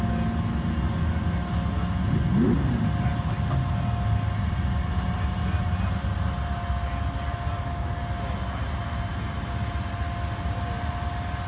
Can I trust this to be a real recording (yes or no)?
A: yes